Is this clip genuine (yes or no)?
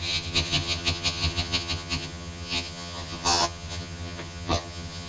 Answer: no